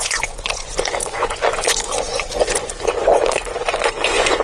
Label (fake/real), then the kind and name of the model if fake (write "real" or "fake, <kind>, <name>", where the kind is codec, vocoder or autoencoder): fake, vocoder, Vocos